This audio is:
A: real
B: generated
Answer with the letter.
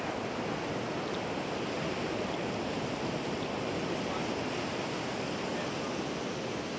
A